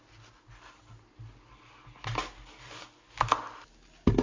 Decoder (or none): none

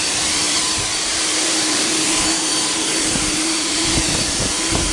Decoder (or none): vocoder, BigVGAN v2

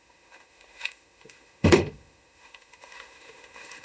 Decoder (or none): autoencoder, DAC-VAE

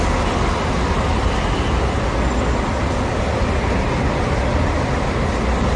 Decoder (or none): none